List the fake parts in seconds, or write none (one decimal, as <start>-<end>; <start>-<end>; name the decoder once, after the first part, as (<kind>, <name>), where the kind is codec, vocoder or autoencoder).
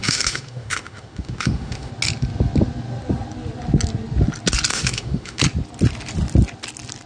0.0-1.9 (autoencoder, DAC-VAE); 4.7-5.4